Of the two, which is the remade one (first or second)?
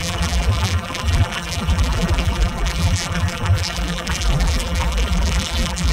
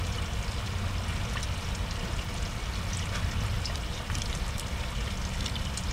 first